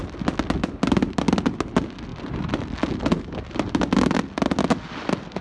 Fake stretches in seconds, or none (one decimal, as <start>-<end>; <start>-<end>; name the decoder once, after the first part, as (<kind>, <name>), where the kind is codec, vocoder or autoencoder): none